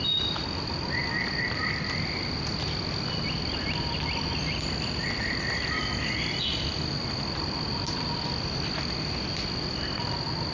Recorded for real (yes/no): yes